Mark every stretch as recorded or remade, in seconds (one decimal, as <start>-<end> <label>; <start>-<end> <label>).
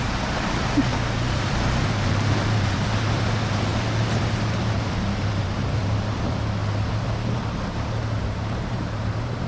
0.0-0.9 remade; 0.9-1.4 recorded; 1.4-6.6 remade; 6.6-8.2 recorded; 8.2-9.5 remade